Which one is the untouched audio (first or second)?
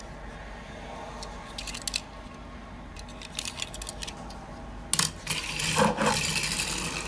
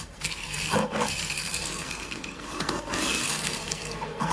first